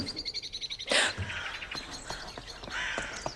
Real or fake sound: real